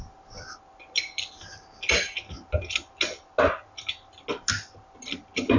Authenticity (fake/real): real